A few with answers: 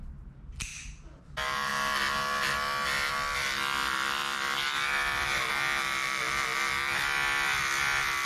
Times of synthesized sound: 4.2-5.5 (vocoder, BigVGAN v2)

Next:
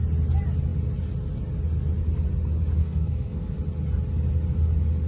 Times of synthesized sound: 2.8-3.5 (codec, SNAC)

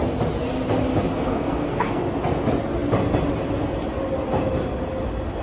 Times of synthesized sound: 0.9-2.0 (codec, SNAC)

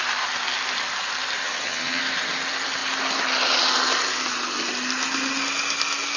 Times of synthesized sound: 1.4-2.0 (vocoder, HiFi-GAN)

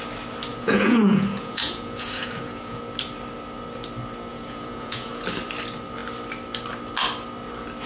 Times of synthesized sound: 0.5-2.8 (vocoder, Vocos); 4.3-5.2